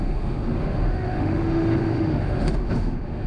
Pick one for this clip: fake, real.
fake